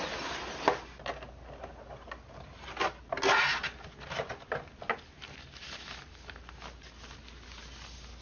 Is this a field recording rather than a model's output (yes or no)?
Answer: yes